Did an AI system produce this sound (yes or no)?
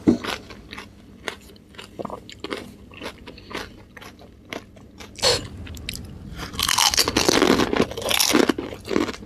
no